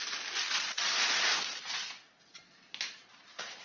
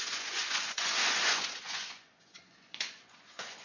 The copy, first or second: second